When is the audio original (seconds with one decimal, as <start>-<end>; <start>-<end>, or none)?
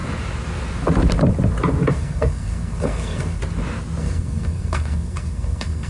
0.0-1.9; 3.4-4.0